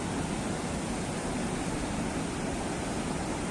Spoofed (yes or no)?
no